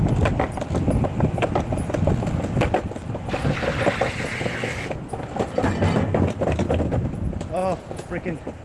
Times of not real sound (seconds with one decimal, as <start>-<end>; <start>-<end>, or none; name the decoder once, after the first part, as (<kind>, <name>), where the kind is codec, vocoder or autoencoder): 7.6-8.6 (vocoder, Vocos)

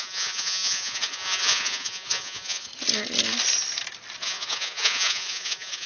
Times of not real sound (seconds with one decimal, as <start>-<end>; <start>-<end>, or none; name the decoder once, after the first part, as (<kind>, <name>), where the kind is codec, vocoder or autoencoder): 0.0-2.7 (vocoder, Vocos); 4.2-5.9

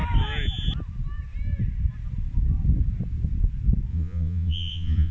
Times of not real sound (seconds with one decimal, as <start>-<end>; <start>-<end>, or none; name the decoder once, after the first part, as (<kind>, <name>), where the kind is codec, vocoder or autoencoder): 3.9-5.1 (vocoder, Vocos)

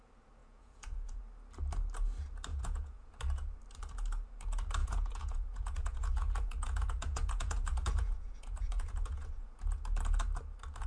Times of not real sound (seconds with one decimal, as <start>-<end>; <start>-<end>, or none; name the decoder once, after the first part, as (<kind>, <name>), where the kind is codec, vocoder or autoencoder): 0.4-1.2 (vocoder, Vocos); 2.5-3.1; 4.8-9.6

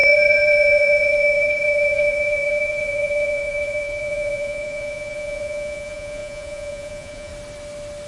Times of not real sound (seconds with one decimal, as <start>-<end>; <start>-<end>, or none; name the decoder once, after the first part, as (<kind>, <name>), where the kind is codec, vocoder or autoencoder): 0.0-7.3 (vocoder, Vocos)

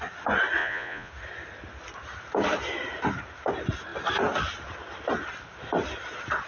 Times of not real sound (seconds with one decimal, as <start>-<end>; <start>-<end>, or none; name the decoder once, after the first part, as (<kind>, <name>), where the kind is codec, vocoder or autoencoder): 0.6-1.1 (vocoder, Vocos)